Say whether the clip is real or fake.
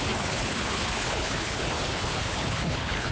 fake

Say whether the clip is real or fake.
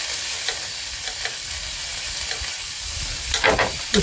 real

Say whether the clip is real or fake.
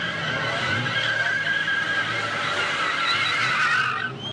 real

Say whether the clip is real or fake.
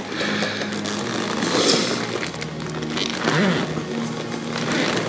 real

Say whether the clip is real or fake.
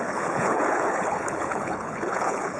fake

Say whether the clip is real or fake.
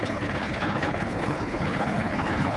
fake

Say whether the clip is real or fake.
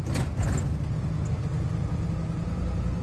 real